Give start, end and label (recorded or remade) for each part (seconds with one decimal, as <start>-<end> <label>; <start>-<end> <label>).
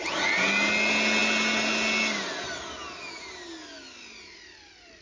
0.0-5.0 recorded